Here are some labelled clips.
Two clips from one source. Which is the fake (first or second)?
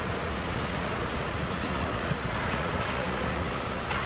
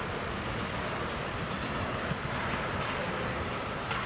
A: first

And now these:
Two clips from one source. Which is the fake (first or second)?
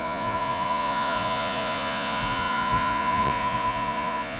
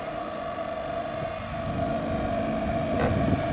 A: first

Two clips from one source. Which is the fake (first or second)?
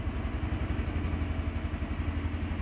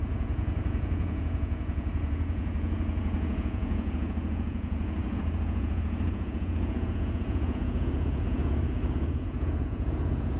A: second